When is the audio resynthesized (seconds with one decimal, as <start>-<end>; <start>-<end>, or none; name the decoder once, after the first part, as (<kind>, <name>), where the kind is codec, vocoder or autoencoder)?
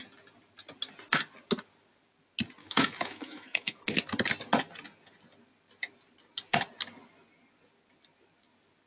2.6-3.8 (autoencoder, DAC-VAE)